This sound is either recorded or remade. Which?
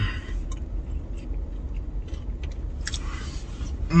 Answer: recorded